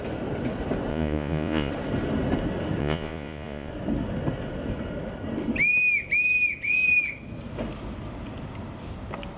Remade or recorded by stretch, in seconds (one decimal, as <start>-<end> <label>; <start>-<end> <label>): 0.0-0.9 recorded; 0.9-1.7 remade; 1.7-2.8 recorded; 2.8-3.7 remade; 3.7-9.4 recorded

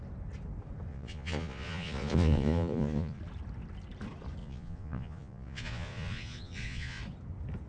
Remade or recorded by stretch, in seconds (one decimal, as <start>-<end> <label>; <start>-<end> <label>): 0.0-0.9 recorded; 0.9-3.2 remade; 3.2-4.4 recorded; 4.4-7.0 remade; 7.0-7.7 recorded

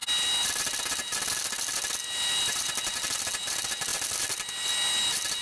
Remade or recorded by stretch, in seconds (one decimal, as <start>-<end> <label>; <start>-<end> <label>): 0.0-5.4 recorded

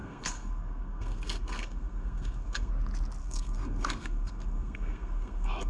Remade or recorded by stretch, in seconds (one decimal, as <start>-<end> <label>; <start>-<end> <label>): 0.0-2.7 remade; 2.7-3.2 recorded; 3.2-5.7 remade

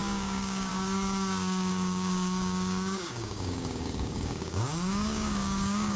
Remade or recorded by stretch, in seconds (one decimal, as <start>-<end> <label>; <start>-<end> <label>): 0.0-6.0 remade

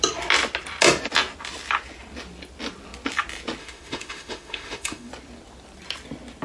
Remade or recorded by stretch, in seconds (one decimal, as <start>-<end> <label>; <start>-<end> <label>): 0.0-3.6 recorded; 3.6-5.1 remade; 5.1-6.4 recorded

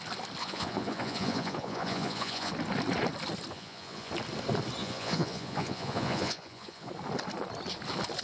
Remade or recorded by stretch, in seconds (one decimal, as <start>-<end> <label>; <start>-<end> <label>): 0.0-0.4 recorded; 0.4-2.5 remade; 2.5-3.5 recorded; 3.5-4.1 remade; 4.1-4.8 recorded; 4.8-6.9 remade; 6.9-8.2 recorded

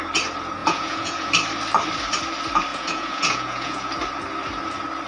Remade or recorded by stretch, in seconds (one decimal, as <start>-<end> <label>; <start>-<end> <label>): 0.0-0.6 recorded; 0.6-1.3 remade; 1.3-2.7 recorded; 2.7-3.9 remade; 3.9-5.1 recorded